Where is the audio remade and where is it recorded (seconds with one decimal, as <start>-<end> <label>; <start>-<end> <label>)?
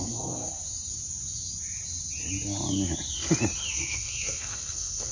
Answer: 0.0-0.6 remade; 0.6-3.7 recorded; 3.7-5.1 remade